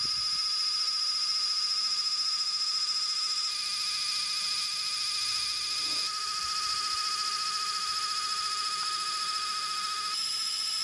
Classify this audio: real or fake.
real